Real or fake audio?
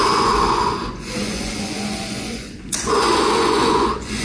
fake